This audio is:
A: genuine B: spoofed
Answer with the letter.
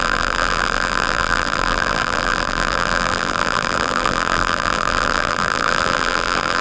B